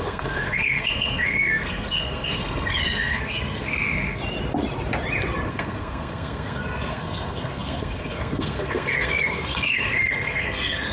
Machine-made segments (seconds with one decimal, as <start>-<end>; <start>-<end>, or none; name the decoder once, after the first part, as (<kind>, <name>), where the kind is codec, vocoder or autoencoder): 0.0-4.2 (codec, SNAC); 5.5-10.9